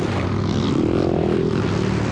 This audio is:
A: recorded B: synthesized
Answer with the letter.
A